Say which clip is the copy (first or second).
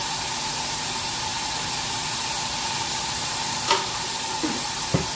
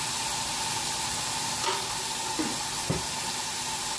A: first